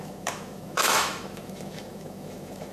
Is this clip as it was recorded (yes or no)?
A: no